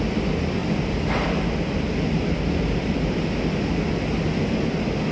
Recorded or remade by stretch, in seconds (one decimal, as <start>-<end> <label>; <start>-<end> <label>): 0.0-0.6 recorded; 0.6-3.3 remade; 3.3-5.1 recorded